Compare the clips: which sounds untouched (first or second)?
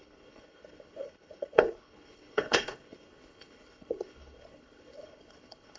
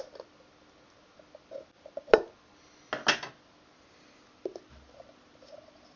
second